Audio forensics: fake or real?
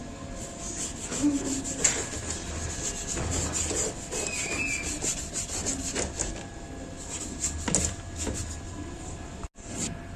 real